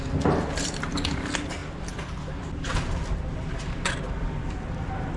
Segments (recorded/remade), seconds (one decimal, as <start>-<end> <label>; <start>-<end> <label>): 0.0-5.2 recorded